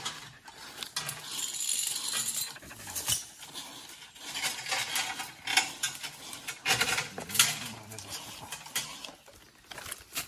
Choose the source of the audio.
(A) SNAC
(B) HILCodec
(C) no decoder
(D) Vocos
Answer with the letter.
C